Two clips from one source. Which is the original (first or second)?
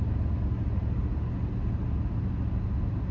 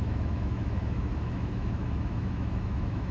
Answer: first